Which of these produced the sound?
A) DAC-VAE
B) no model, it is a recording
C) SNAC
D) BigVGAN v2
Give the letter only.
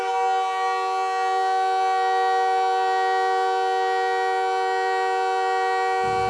B